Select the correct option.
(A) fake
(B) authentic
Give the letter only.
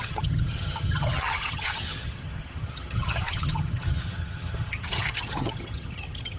A